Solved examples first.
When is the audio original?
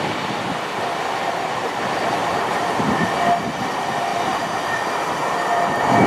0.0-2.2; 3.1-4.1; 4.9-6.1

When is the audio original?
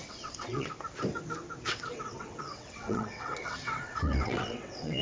0.7-1.7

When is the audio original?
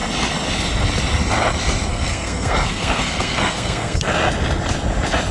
0.0-1.9; 4.1-5.3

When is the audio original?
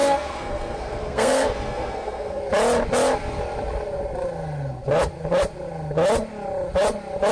2.4-7.3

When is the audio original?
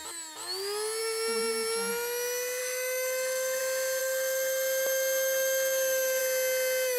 0.0-2.6; 3.6-4.0; 6.2-7.0